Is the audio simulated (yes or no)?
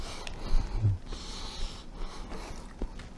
no